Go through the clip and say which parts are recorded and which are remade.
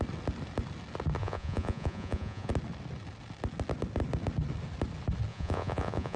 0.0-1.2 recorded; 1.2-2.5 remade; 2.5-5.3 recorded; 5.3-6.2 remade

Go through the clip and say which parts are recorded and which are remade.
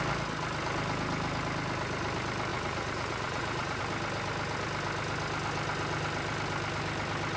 0.0-2.5 recorded; 2.5-3.8 remade; 3.8-7.4 recorded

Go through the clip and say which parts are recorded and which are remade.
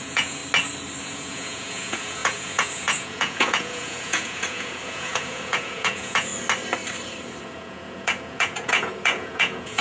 0.0-0.4 remade; 0.4-1.0 recorded; 1.0-6.3 remade; 6.3-7.4 recorded; 7.4-9.8 remade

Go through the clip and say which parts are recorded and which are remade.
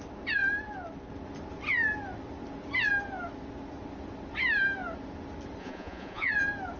0.0-5.6 recorded; 5.6-6.3 remade; 6.3-6.8 recorded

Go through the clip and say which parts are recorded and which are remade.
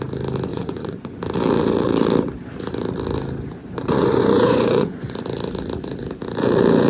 0.0-0.5 recorded; 0.5-1.2 remade; 1.2-3.6 recorded; 3.6-5.1 remade; 5.1-6.9 recorded